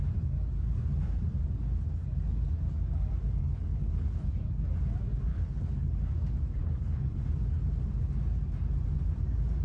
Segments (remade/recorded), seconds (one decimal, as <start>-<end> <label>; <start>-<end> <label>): 0.0-3.4 recorded; 3.4-4.3 remade; 4.3-5.3 recorded; 5.3-6.0 remade; 6.0-6.6 recorded; 6.6-7.2 remade; 7.2-9.6 recorded